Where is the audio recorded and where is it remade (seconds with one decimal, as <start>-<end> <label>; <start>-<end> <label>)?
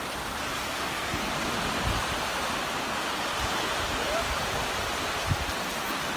0.0-0.6 recorded; 0.6-1.3 remade; 1.3-6.2 recorded